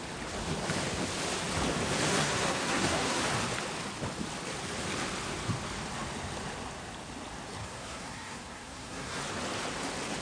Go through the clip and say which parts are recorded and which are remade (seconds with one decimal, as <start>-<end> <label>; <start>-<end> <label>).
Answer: 0.0-2.1 recorded; 2.1-3.2 remade; 3.2-7.6 recorded; 7.6-9.2 remade; 9.2-10.2 recorded